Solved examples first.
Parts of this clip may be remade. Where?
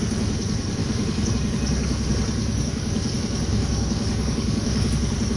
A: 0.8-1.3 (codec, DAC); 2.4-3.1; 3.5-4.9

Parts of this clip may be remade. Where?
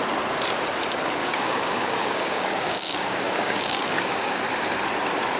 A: 1.2-4.4 (codec, DAC)